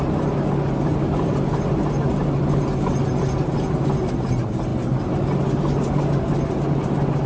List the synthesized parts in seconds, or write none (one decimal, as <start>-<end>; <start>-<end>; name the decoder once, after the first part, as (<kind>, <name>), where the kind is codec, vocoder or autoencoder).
none